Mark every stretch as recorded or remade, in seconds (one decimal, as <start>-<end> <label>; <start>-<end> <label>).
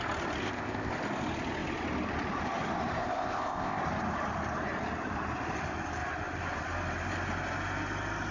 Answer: 0.0-0.4 recorded; 0.4-0.9 remade; 0.9-3.0 recorded; 3.0-3.8 remade; 3.8-8.3 recorded